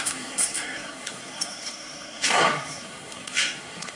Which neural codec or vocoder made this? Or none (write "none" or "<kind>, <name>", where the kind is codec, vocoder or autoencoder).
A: codec, SNAC